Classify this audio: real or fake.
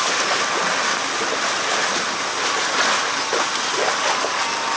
real